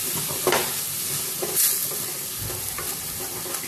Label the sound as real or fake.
real